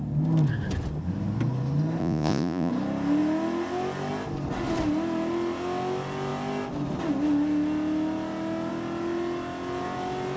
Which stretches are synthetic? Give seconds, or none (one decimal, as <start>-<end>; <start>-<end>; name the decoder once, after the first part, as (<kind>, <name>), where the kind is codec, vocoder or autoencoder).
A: 2.0-2.7 (vocoder, Vocos)